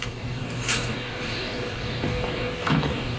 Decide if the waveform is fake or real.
fake